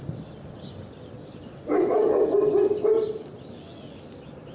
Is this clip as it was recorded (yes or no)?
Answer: yes